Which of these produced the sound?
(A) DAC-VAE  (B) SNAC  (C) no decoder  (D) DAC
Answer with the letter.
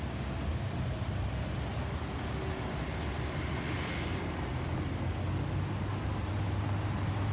C